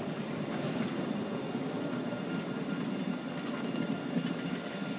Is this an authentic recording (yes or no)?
yes